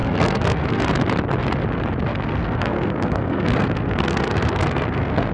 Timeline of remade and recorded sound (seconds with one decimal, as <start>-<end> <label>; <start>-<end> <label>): 0.0-0.8 remade; 0.8-2.1 recorded; 2.1-5.3 remade